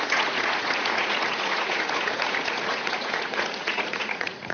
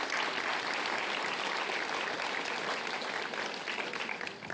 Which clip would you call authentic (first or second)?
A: second